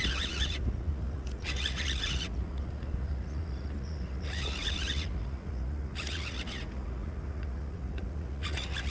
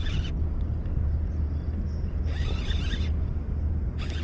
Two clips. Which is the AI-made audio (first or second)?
first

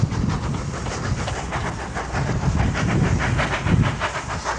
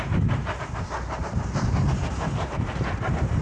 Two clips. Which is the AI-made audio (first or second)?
second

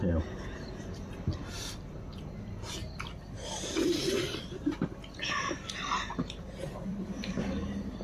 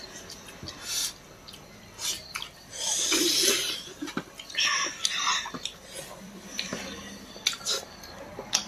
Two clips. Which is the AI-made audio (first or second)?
first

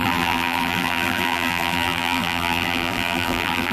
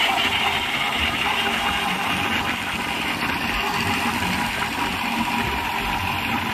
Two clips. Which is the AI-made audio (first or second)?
first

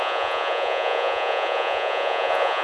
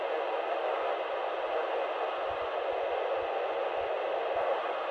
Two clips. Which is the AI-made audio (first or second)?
first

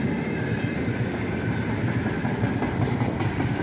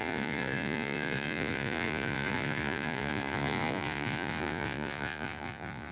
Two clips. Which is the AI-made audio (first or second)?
second